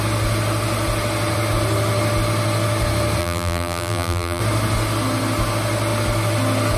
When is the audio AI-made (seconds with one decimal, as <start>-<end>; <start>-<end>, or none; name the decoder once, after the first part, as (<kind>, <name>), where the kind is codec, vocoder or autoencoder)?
3.2-4.4 (vocoder, BigVGAN v2)